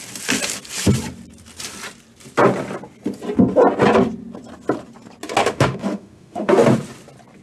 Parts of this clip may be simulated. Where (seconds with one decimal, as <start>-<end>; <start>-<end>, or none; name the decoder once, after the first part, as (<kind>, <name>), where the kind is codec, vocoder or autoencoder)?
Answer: 5.4-6.5 (autoencoder, DAC-VAE)